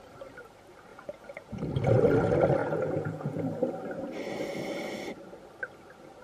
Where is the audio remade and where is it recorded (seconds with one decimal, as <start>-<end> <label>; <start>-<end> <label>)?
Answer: 0.0-0.9 recorded; 0.9-1.6 remade; 1.6-2.6 recorded; 2.6-3.4 remade; 3.4-6.2 recorded